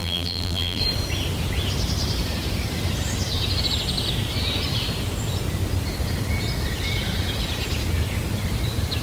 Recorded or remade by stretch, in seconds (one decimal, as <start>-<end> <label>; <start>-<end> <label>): 0.0-0.8 remade; 0.8-9.0 recorded